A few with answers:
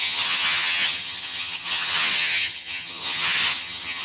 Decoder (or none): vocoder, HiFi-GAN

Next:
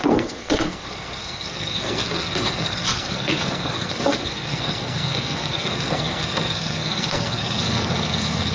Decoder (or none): codec, SNAC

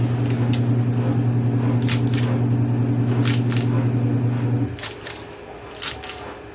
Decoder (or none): none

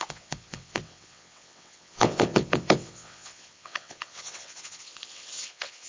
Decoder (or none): vocoder, WaveNeXt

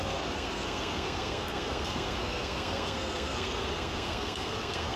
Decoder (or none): codec, SNAC